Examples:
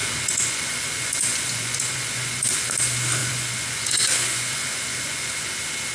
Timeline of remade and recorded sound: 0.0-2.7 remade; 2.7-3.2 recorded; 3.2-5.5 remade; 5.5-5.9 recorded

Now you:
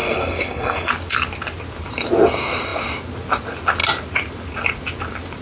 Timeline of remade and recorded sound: 0.0-0.9 remade; 0.9-5.4 recorded

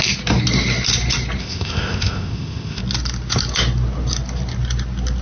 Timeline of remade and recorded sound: 0.0-1.4 recorded; 1.4-2.8 remade; 2.8-5.2 recorded

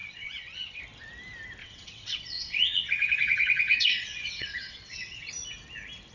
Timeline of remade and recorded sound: 0.0-0.8 remade; 0.8-1.6 recorded; 1.6-5.3 remade; 5.3-6.1 recorded